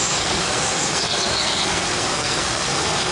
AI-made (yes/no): yes